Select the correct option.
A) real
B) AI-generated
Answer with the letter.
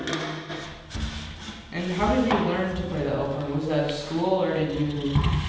A